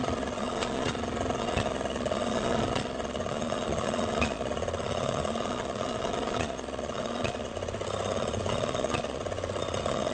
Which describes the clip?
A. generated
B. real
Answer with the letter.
A